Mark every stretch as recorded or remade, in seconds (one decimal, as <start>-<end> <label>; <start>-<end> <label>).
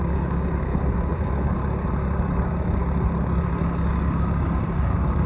0.0-1.6 remade; 1.6-2.3 recorded; 2.3-2.8 remade; 2.8-3.6 recorded; 3.6-5.3 remade